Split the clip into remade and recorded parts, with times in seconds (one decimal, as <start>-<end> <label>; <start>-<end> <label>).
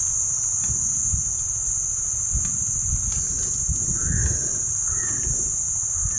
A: 0.0-6.2 recorded